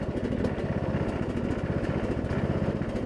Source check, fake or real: real